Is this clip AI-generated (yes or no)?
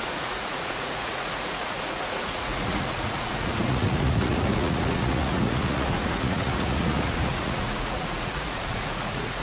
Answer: yes